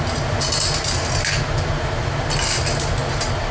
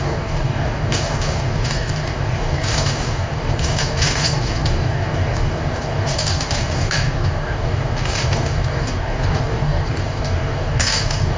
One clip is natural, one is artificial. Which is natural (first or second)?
first